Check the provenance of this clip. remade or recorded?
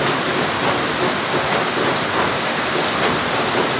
recorded